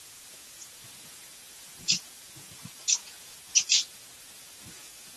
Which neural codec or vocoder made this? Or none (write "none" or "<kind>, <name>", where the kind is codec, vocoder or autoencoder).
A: vocoder, Vocos